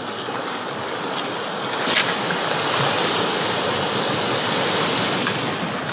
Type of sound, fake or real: real